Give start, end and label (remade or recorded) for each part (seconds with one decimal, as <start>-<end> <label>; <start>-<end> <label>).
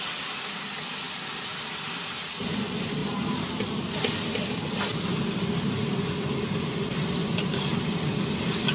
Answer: 0.0-8.7 recorded